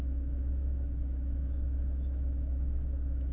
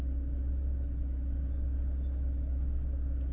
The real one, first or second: second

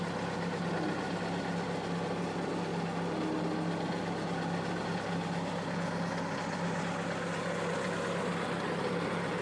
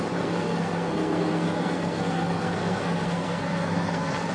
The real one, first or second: first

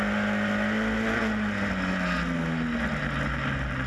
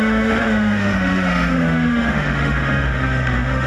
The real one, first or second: first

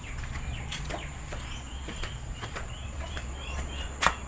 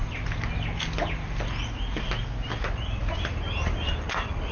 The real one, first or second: second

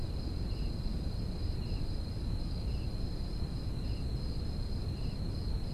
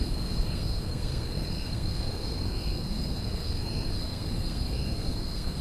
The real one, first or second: first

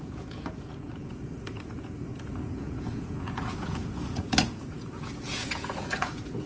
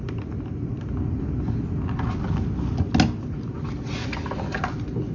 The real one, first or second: second